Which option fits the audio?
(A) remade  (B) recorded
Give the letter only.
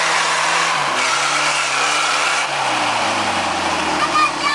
A